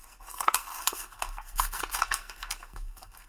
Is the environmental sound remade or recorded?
remade